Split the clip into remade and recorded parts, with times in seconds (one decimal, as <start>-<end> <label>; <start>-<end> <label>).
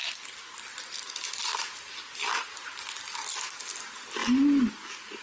0.0-1.5 recorded; 1.5-3.8 remade; 3.8-5.2 recorded